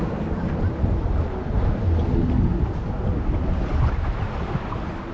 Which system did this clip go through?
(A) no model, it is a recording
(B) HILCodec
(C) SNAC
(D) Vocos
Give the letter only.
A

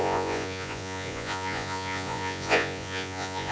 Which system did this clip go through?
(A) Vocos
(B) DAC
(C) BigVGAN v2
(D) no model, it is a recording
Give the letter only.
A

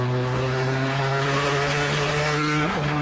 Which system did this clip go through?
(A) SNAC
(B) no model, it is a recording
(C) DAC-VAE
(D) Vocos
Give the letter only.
A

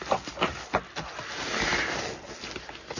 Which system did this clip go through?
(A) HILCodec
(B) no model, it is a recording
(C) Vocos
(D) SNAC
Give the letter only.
B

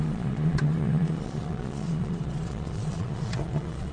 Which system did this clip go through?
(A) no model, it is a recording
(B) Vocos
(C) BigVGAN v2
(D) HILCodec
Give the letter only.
B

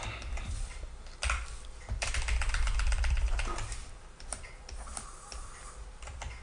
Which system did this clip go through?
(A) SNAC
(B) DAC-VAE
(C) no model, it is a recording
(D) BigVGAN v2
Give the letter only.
D